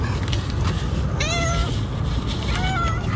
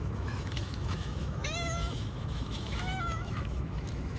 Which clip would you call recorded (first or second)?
first